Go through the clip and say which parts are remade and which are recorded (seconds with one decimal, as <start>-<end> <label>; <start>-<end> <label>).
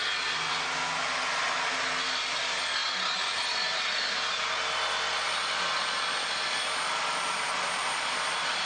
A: 0.0-8.7 recorded